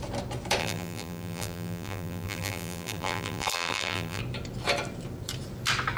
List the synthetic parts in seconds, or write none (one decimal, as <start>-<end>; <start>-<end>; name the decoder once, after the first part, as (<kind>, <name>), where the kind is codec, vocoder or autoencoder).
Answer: 0.6-4.2 (vocoder, BigVGAN v2)